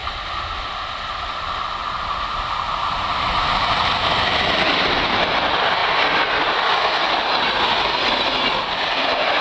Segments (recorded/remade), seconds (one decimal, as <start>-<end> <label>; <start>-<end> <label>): 0.0-9.4 recorded